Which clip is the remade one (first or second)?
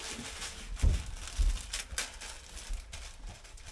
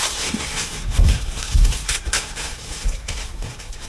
second